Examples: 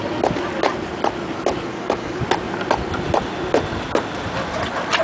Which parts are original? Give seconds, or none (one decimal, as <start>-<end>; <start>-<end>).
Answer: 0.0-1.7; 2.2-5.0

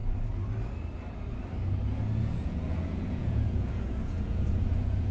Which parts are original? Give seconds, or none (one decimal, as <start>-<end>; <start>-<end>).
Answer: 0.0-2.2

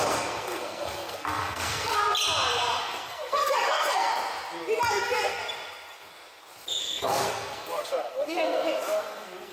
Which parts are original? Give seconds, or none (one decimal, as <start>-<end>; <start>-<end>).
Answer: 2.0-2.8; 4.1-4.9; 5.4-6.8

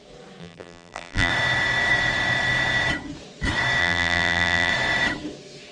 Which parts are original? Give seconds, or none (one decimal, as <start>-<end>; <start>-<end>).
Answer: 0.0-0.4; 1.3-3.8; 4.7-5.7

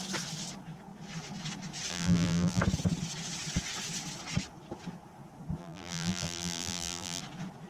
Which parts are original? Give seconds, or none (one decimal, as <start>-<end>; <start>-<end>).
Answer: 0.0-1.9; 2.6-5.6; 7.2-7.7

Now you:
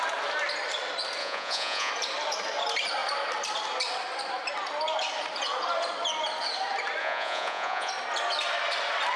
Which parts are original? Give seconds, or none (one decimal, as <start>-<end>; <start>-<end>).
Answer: 0.0-1.2; 1.9-7.0; 7.9-9.2